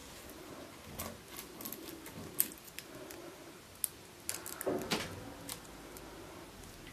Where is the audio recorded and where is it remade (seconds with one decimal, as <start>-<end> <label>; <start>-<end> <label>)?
0.0-6.9 recorded